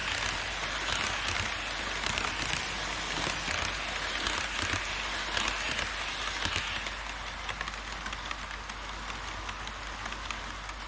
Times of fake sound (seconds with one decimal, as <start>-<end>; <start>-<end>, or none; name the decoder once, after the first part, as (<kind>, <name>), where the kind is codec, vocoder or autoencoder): none